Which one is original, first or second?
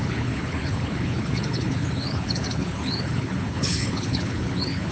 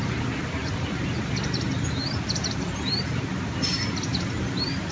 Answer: second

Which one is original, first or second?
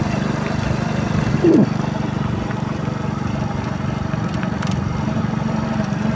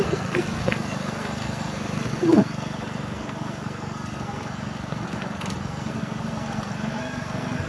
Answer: first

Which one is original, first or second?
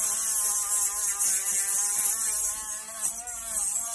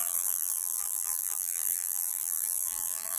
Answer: first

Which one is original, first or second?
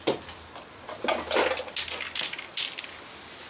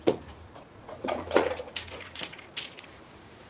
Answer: first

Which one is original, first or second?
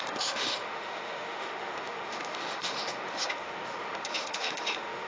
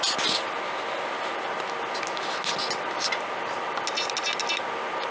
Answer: second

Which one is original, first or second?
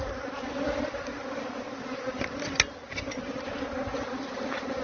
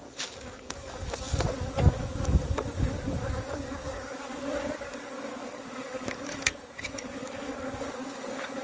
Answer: first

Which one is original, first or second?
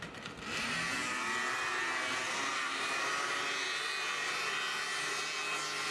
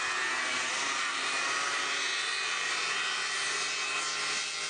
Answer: first